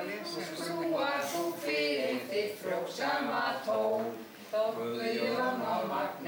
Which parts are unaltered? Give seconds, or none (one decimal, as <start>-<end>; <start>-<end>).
0.0-6.3